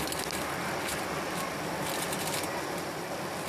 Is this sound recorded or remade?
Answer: recorded